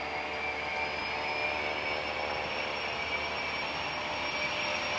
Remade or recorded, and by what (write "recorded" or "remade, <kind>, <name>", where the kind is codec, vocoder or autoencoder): recorded